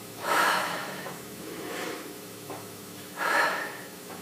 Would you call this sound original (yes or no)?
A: no